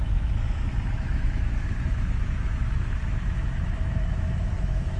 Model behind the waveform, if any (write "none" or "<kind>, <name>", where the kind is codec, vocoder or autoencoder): autoencoder, DAC-VAE